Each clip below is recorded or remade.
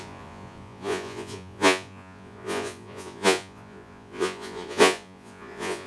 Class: remade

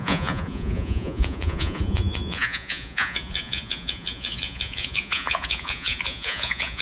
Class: remade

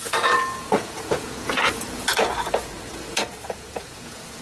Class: remade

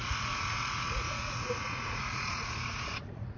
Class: remade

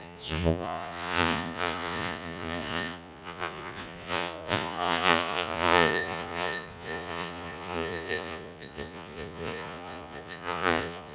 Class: remade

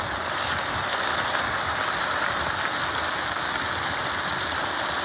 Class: recorded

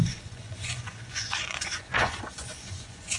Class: remade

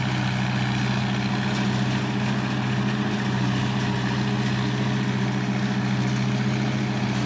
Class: recorded